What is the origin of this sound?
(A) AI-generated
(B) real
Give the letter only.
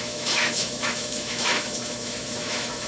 A